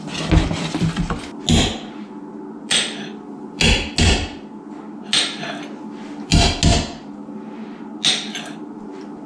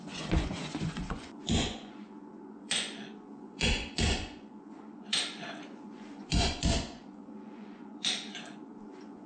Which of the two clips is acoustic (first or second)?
first